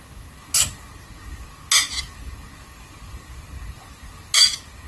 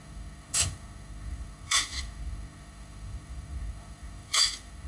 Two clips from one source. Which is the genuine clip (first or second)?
first